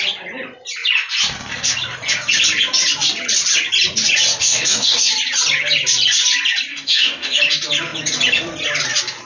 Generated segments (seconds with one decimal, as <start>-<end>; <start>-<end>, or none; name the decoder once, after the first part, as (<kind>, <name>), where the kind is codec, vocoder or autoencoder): 4.4-5.1 (codec, DAC); 6.7-7.4